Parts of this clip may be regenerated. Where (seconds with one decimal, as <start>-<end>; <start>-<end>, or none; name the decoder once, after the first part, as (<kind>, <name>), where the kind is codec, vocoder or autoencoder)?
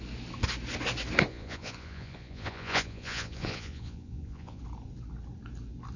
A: 1.3-4.6 (vocoder, Vocos)